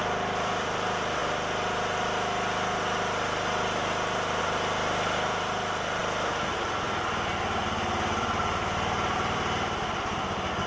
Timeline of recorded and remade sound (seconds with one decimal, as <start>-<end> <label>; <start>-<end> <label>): 0.0-1.2 remade; 1.2-4.4 recorded; 4.4-6.0 remade; 6.0-7.6 recorded; 7.6-10.7 remade